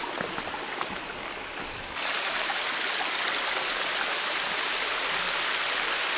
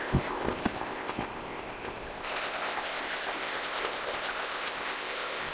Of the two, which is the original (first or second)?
first